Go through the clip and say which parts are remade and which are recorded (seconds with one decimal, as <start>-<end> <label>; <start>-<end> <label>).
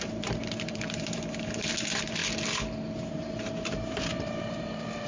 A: 0.0-2.2 remade; 2.2-3.1 recorded; 3.1-5.1 remade